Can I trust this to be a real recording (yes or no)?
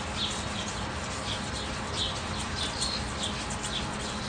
yes